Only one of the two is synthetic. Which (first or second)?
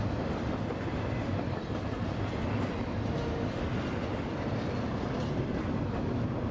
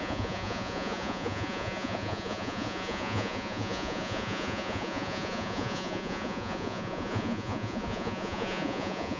second